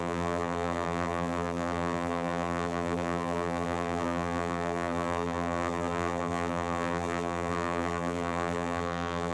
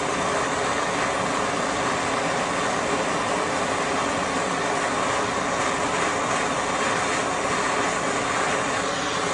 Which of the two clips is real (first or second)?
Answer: second